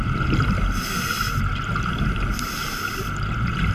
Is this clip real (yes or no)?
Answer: yes